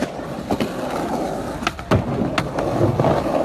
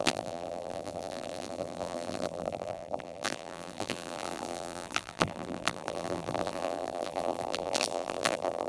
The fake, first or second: second